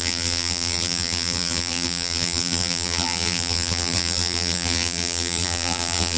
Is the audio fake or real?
fake